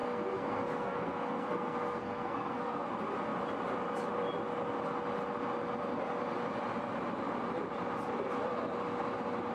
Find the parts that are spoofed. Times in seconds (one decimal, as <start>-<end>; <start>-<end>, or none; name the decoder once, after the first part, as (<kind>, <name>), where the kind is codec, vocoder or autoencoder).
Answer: 0.0-2.9 (codec, SNAC)